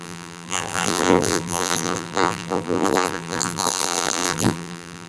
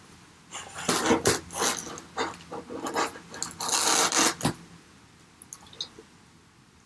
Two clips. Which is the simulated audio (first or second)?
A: first